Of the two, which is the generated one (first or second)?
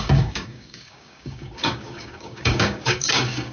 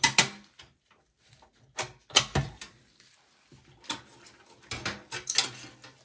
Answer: first